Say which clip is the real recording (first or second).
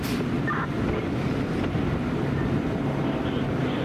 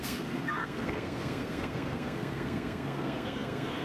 first